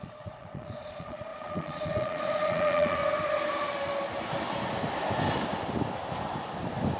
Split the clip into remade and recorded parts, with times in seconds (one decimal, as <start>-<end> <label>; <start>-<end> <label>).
0.0-3.0 remade; 3.0-7.0 recorded